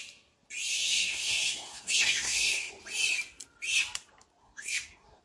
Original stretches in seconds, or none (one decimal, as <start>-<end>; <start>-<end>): 0.0-0.7; 2.7-4.4